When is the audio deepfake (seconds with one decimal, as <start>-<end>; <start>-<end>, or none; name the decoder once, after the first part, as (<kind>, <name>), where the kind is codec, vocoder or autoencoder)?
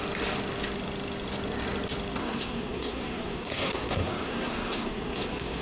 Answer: 2.2-5.6 (codec, SNAC)